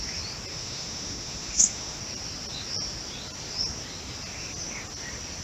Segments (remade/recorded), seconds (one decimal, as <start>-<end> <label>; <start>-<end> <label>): 0.0-0.5 recorded; 0.5-2.0 remade; 2.0-5.4 recorded